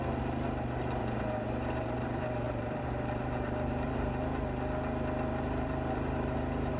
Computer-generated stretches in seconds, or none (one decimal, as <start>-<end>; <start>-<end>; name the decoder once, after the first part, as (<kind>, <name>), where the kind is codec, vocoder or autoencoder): 1.0-4.1 (vocoder, BigVGAN v2); 5.3-6.8